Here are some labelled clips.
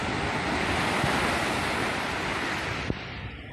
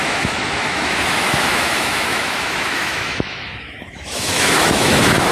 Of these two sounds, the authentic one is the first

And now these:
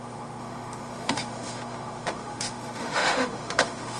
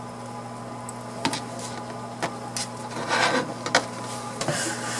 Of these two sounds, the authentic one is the second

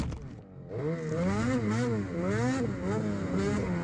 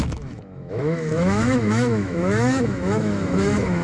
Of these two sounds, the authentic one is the first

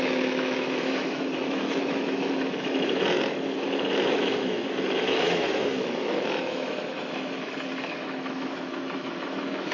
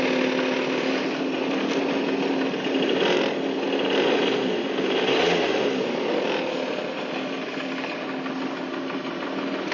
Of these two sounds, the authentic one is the second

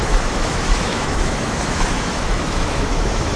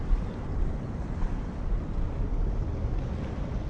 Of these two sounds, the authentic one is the second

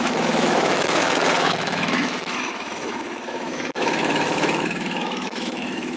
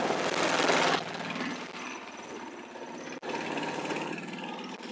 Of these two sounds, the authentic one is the second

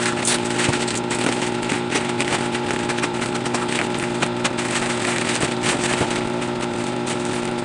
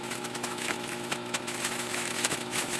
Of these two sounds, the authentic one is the first